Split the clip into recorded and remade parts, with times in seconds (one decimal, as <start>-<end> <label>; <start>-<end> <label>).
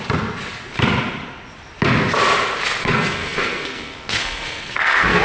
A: 0.0-2.8 recorded; 2.8-5.2 remade